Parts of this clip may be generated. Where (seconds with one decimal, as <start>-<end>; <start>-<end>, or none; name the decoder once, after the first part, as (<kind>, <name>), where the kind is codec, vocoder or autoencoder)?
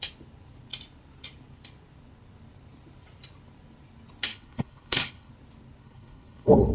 4.3-5.3 (codec, HILCodec); 5.8-6.7